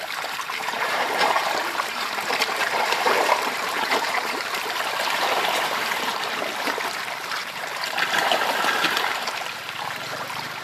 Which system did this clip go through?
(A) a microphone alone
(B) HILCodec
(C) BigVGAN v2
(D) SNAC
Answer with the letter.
C